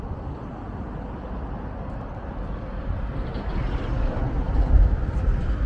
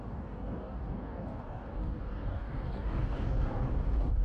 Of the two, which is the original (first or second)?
first